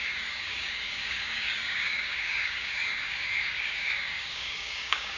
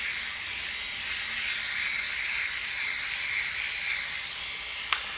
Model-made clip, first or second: first